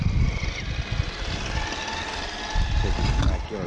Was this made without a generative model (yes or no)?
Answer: yes